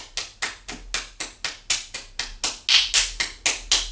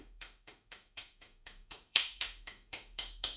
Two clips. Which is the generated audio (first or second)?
second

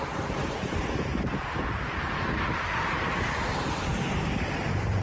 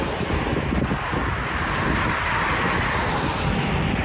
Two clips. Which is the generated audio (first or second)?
first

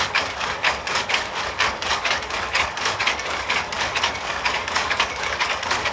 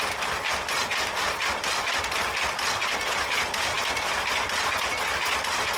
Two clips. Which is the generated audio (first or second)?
first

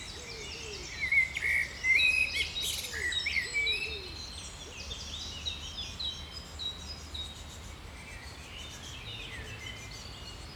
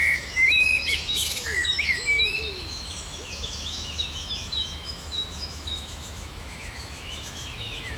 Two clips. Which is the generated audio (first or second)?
second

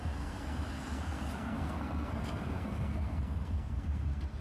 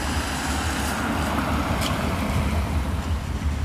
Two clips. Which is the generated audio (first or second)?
first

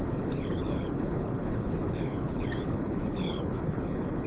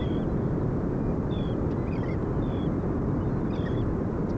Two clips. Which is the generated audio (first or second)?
first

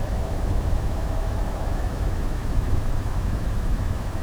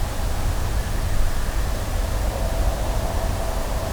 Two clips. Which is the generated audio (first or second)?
first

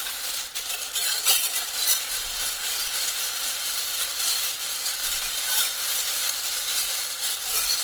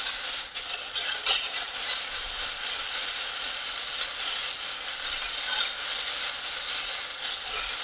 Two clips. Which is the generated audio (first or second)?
first